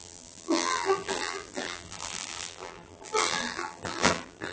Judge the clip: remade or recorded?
remade